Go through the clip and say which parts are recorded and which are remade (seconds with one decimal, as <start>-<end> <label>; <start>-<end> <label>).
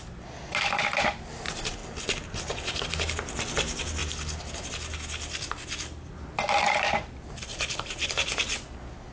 0.0-1.8 recorded; 1.8-2.8 remade; 2.8-7.5 recorded; 7.5-8.1 remade; 8.1-9.1 recorded